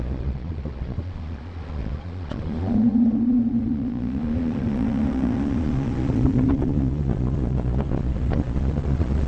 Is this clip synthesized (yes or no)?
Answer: yes